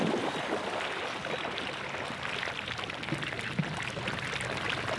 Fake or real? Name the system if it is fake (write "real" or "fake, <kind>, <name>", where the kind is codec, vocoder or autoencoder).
real